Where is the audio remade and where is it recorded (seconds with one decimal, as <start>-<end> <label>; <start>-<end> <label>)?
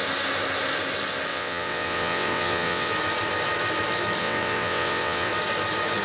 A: 0.0-1.3 recorded; 1.3-2.9 remade; 2.9-4.2 recorded; 4.2-5.3 remade; 5.3-6.0 recorded